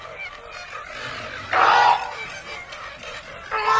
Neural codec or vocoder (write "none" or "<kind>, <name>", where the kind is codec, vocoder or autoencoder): none